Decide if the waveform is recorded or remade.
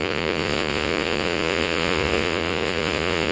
remade